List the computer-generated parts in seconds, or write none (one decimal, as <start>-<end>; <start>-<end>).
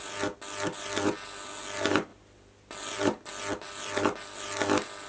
none